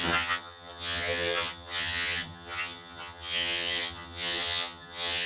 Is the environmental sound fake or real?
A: fake